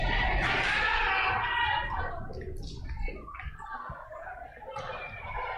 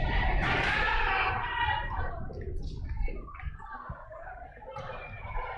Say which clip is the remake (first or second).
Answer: second